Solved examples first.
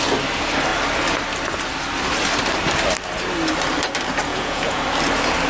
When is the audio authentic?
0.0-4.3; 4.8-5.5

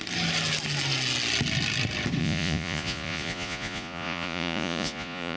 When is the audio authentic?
0.0-2.2

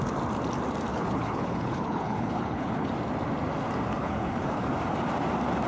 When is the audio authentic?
0.0-0.9; 2.9-4.0; 4.7-5.7

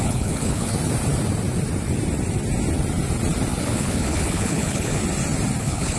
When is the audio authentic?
0.7-3.6; 5.0-5.6

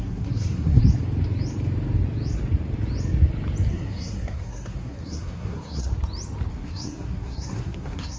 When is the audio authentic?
0.8-3.7; 5.9-6.5